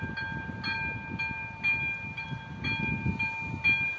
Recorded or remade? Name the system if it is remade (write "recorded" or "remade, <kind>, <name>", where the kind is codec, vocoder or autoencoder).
recorded